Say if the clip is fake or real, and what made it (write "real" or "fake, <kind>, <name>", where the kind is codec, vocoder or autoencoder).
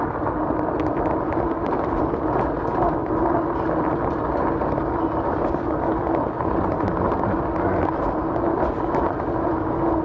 real